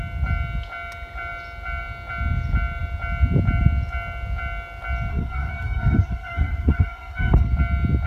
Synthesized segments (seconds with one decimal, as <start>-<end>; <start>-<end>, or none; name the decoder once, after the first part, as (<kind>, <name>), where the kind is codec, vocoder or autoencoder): 5.1-7.5 (codec, SNAC)